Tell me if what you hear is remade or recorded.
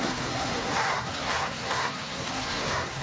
remade